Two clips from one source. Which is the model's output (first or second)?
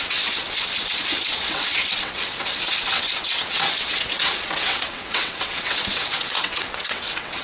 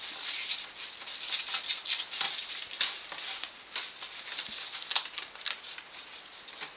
first